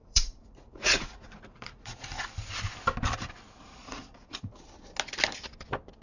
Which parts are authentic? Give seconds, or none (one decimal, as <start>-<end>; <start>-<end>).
2.2-3.8; 4.6-6.0